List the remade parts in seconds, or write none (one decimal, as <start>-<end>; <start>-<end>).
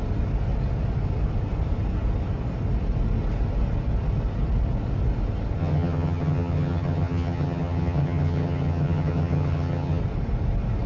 5.6-10.0